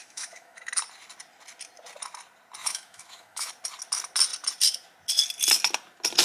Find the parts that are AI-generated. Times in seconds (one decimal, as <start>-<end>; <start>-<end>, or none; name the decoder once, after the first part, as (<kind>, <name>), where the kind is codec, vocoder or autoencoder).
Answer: 0.0-0.7 (autoencoder, DAC-VAE); 2.6-3.5